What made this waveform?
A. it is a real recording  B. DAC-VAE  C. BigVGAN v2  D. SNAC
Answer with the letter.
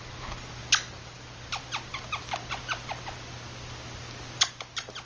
A